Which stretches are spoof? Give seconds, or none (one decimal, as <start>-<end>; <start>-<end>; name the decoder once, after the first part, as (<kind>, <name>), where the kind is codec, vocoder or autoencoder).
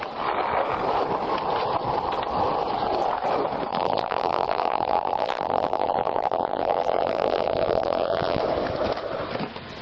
3.7-8.4 (vocoder, BigVGAN v2)